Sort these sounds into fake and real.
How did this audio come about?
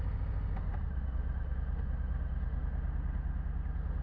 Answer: real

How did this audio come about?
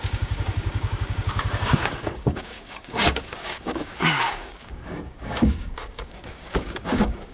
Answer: fake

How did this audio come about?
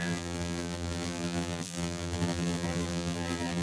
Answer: fake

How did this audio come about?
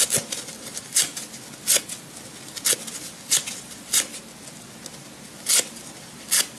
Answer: real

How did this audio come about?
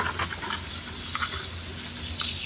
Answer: real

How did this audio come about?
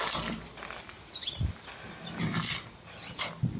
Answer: real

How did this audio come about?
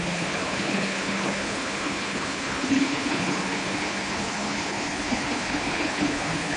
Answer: fake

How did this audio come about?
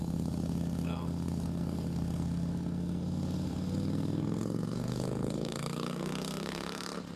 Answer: fake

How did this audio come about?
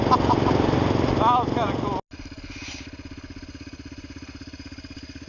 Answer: real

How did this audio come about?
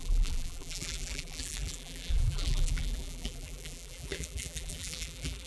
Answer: fake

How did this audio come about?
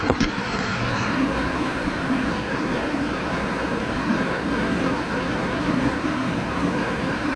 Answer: fake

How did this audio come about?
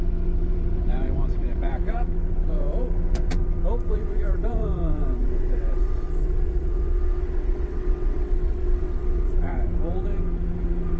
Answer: fake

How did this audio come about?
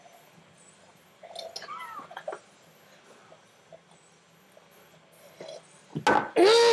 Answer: real